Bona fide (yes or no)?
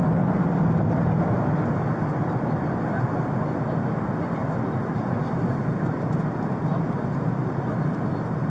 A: yes